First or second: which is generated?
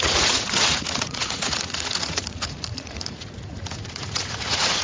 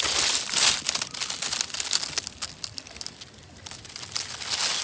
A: first